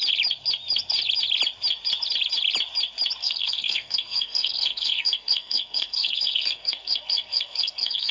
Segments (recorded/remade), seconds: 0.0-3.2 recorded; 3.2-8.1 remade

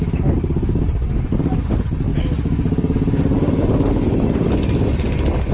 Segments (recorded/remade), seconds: 0.0-5.5 recorded